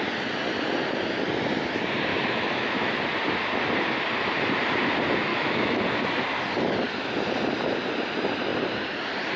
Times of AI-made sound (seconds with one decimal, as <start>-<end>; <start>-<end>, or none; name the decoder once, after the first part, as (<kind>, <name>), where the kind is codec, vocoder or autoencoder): 2.1-2.9 (autoencoder, DAC-VAE); 5.3-5.8